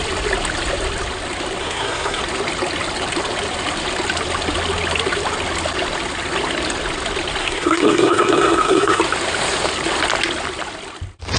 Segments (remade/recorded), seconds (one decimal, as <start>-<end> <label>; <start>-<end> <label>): 0.0-1.6 recorded; 1.6-2.2 remade; 2.2-7.4 recorded; 7.4-9.0 remade; 9.0-11.4 recorded